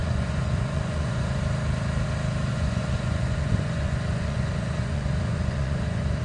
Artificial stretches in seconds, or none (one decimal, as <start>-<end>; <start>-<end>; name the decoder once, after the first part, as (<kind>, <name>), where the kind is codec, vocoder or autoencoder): 0.0-1.4 (vocoder, Vocos); 2.5-6.2